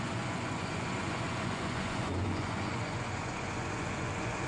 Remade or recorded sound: remade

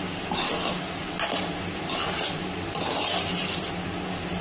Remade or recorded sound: recorded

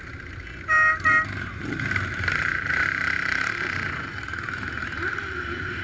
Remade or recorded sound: remade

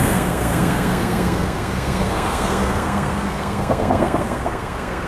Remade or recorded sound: remade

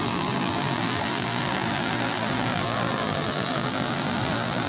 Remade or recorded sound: remade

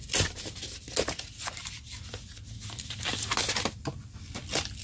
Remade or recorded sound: recorded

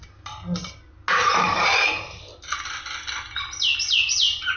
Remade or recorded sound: recorded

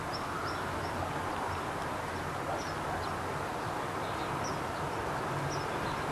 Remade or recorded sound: recorded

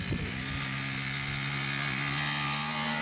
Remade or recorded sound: recorded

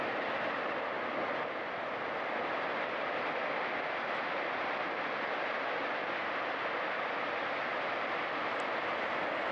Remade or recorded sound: recorded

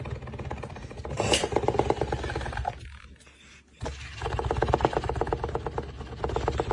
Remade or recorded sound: recorded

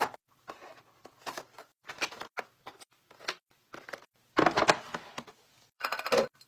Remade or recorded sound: recorded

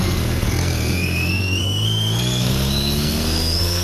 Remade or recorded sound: remade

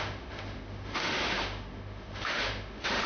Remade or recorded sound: remade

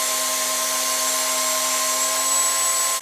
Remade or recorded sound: recorded